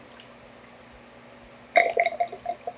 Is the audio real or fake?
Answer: real